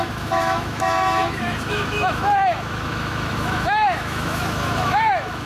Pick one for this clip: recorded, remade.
remade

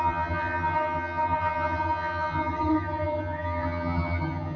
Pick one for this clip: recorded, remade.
remade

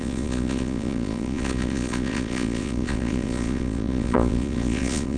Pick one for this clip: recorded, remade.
remade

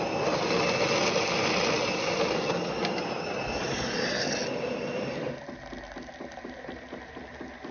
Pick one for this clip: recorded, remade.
recorded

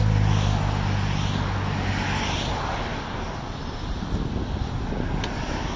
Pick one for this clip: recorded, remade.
recorded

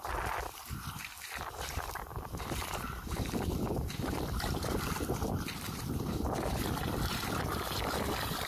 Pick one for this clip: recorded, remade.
remade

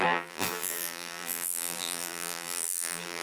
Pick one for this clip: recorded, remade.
remade